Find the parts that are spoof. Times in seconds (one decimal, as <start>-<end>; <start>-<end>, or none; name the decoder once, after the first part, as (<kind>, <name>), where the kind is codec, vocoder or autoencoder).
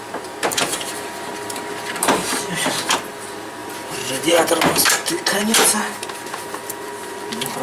0.0-1.3 (vocoder, BigVGAN v2); 1.9-7.6